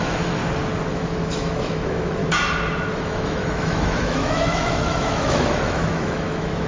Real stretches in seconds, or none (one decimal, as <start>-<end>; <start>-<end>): 0.4-0.9; 2.2-2.9